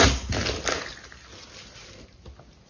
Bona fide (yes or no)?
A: yes